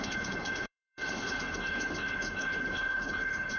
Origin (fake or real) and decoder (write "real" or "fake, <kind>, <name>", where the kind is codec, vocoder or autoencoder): fake, codec, HILCodec